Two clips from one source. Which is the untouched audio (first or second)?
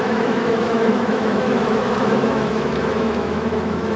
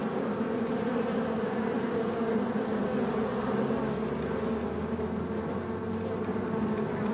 second